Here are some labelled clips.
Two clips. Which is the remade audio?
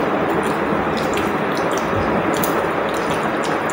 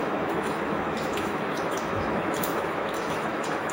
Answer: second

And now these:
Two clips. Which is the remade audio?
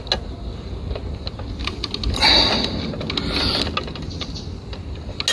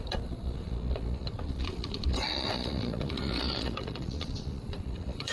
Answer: second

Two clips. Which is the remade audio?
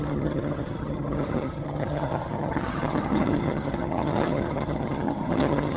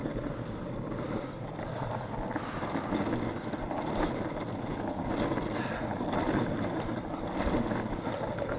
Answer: first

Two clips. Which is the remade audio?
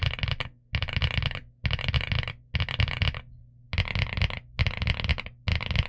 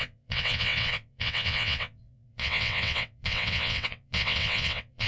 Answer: second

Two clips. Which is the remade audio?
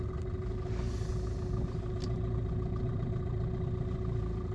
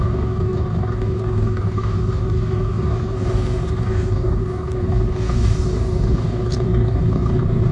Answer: second